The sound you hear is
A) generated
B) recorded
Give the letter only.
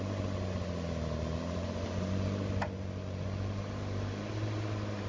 B